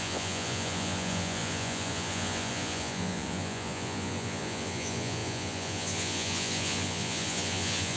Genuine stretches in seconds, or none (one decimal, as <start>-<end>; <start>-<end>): none